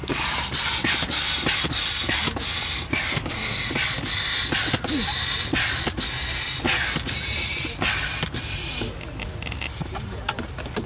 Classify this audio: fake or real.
real